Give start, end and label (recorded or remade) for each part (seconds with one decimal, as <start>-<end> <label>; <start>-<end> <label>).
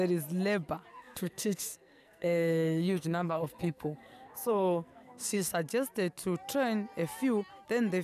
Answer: 0.0-0.9 recorded; 0.9-5.5 remade; 5.5-8.0 recorded